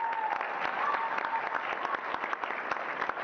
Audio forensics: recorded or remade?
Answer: recorded